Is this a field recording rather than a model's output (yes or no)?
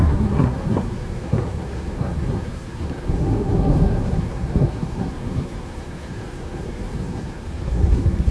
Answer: no